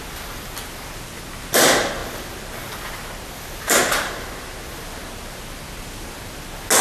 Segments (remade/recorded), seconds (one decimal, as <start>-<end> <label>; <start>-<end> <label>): 0.0-6.8 recorded